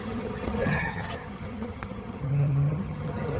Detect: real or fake fake